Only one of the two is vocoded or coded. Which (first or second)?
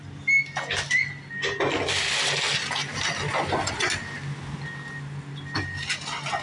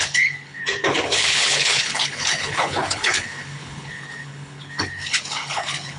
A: second